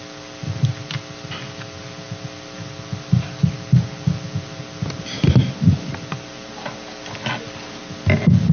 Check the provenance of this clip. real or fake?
real